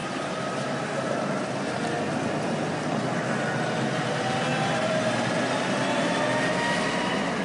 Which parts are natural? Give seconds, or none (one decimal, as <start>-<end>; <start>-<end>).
1.3-4.5; 6.2-7.4